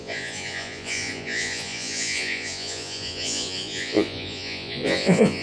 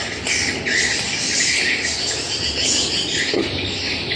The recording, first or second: second